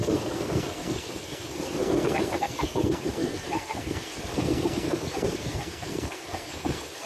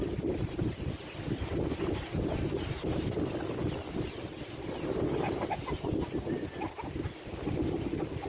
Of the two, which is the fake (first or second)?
first